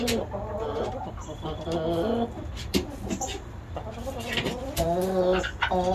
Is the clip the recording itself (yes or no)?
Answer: yes